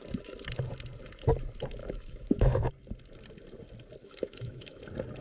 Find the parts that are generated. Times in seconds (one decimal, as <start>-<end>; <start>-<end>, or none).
1.8-2.7; 4.0-4.8